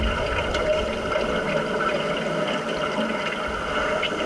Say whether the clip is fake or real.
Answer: real